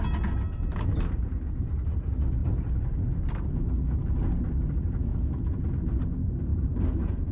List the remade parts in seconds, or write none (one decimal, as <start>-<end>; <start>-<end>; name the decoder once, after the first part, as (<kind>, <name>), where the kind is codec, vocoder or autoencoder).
6.5-7.3 (vocoder, BigVGAN v2)